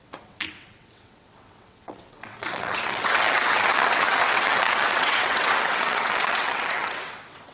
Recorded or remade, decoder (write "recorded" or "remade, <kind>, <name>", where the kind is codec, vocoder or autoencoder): remade, vocoder, WaveNeXt